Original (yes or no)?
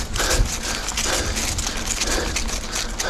yes